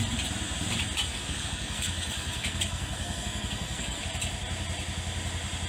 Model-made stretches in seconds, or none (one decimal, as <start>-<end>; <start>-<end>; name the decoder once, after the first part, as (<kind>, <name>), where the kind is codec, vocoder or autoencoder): 1.1-4.0 (codec, SNAC)